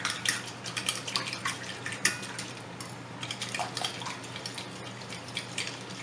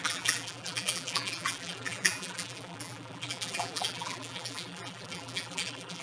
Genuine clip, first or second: first